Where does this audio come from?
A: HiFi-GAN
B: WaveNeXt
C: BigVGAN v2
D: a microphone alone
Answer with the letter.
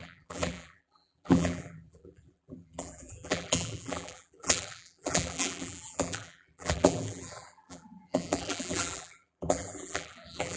C